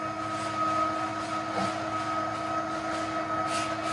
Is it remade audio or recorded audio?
recorded